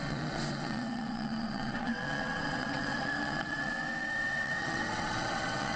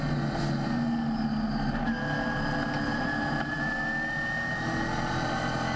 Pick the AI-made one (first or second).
first